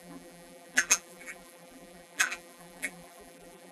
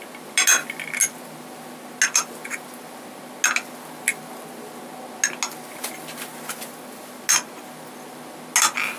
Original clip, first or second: second